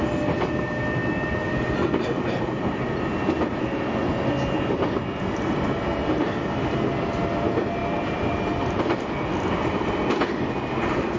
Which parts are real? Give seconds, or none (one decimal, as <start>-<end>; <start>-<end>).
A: 0.0-7.8; 8.3-11.2